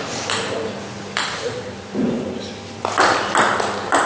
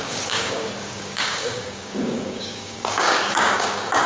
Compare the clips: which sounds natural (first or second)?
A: first